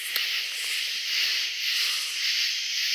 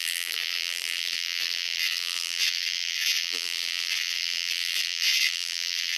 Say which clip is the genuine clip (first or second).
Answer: first